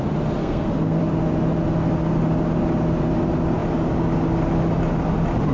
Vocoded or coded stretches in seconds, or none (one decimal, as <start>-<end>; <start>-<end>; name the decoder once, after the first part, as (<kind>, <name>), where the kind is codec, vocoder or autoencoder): 0.4-1.0 (codec, SNAC)